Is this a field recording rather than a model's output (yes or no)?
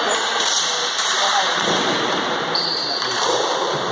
no